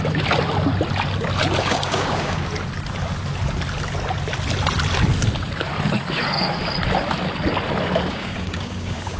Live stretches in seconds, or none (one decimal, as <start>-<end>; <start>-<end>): 0.0-1.6; 2.5-8.1